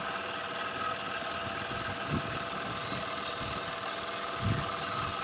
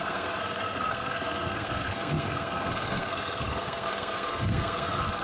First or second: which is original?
first